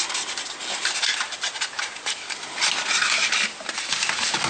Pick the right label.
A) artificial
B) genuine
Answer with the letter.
B